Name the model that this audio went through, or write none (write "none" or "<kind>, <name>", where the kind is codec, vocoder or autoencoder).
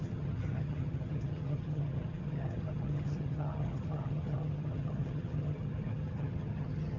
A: vocoder, HiFi-GAN